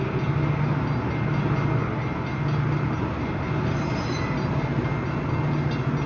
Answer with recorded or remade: recorded